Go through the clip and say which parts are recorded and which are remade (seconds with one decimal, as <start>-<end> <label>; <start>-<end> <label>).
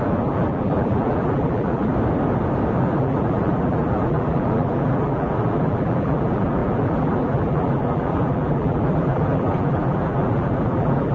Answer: 0.0-1.9 remade; 1.9-2.8 recorded; 2.8-11.1 remade